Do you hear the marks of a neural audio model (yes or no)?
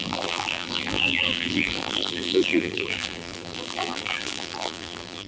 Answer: yes